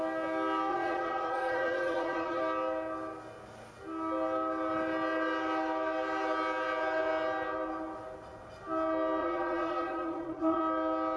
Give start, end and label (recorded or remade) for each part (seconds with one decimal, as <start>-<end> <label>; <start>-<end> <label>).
0.0-0.7 recorded; 0.7-2.4 remade; 2.4-9.2 recorded; 9.2-10.6 remade; 10.6-11.2 recorded

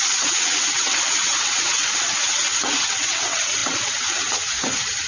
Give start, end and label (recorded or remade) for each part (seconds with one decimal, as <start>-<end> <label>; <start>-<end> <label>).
0.0-5.1 remade